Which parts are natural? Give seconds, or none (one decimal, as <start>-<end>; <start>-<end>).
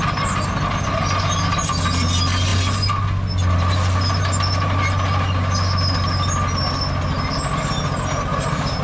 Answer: 0.0-8.8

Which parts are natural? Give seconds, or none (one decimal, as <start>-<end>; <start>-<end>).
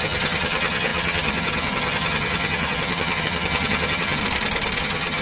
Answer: 4.2-4.8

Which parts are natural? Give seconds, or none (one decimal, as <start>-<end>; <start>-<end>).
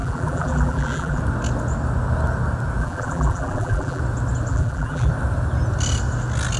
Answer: 1.2-2.8; 4.0-4.5; 5.1-6.6